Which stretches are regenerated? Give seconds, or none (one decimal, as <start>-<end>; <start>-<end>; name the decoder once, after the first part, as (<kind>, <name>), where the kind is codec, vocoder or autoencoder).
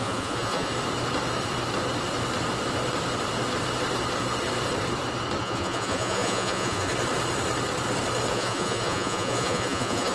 0.0-0.7 (vocoder, Vocos); 5.4-6.9; 8.3-10.1